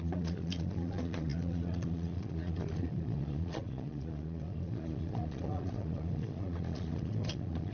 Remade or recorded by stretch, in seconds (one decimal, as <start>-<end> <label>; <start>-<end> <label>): 0.0-7.7 remade